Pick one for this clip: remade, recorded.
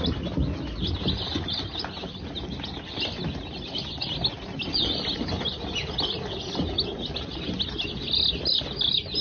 recorded